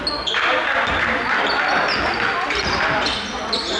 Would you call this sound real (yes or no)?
yes